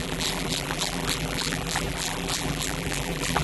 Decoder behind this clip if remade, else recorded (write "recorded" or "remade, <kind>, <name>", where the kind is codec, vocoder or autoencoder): remade, vocoder, BigVGAN v2